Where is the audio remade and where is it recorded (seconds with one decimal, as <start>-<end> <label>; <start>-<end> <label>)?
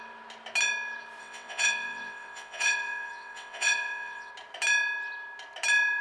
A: 0.0-1.2 recorded; 1.2-4.3 remade; 4.3-6.0 recorded